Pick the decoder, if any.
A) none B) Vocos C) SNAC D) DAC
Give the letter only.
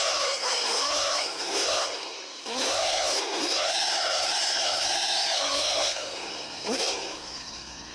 C